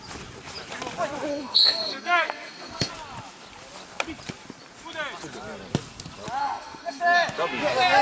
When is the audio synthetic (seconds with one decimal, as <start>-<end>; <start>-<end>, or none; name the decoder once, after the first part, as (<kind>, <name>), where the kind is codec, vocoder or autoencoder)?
1.3-2.9 (codec, SNAC); 6.4-7.0